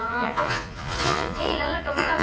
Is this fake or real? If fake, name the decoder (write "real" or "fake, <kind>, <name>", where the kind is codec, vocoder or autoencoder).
fake, vocoder, Vocos